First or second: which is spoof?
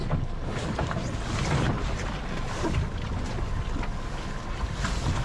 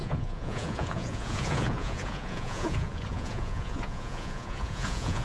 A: second